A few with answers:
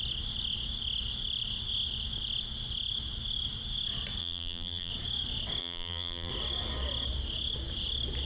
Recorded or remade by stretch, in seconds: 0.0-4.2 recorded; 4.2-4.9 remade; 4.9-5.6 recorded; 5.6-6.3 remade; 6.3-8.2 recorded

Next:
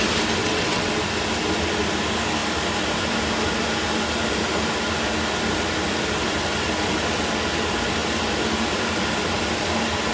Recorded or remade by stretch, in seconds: 0.0-0.4 recorded; 0.4-0.9 remade; 0.9-10.1 recorded

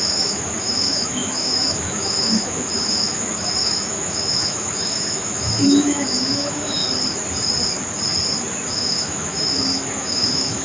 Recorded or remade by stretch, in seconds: 0.0-6.8 remade; 6.8-8.7 recorded; 8.7-10.6 remade

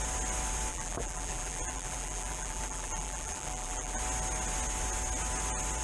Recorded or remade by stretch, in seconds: 0.0-0.7 recorded; 0.7-4.0 remade; 4.0-5.8 recorded